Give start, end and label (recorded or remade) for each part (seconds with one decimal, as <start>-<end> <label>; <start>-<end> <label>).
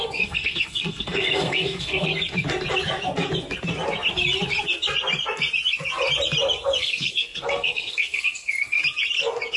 0.0-2.1 remade; 2.1-6.8 recorded; 6.8-8.8 remade; 8.8-9.6 recorded